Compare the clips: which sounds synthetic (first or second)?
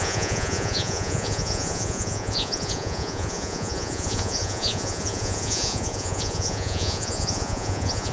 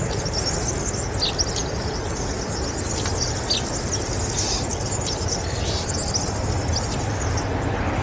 first